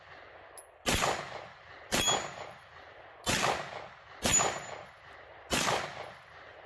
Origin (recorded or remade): recorded